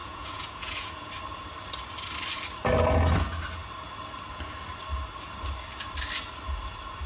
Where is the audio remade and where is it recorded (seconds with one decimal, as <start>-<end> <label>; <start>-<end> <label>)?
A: 0.0-1.1 remade; 1.1-7.1 recorded